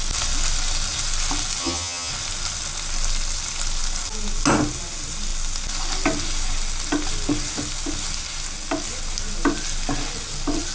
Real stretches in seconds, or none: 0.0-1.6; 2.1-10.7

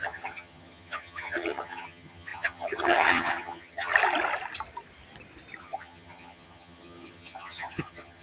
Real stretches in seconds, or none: 3.9-5.6

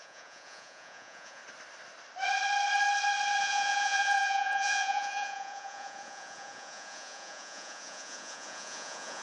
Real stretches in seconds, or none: 1.4-3.4

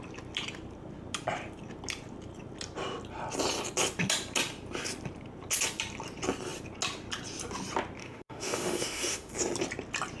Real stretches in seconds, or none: 0.0-8.0; 9.3-10.2

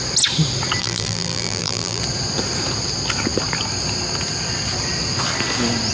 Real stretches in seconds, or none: 0.0-0.8; 2.0-5.9